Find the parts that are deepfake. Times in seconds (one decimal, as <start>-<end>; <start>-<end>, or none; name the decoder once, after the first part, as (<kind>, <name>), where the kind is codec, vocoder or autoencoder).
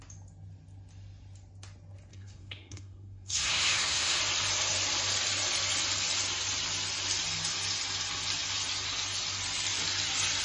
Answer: 2.1-4.2 (codec, SNAC)